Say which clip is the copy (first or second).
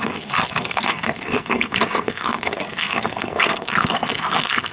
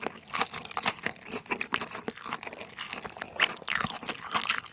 first